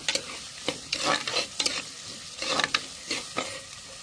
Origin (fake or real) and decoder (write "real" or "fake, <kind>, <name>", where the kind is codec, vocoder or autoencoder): real